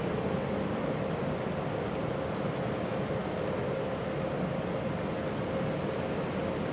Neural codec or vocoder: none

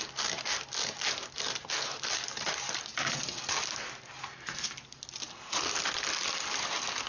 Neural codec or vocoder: none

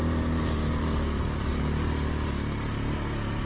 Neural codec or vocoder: none